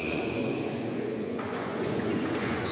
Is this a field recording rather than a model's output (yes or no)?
no